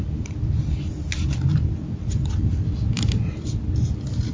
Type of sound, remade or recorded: recorded